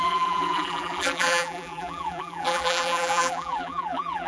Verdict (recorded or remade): remade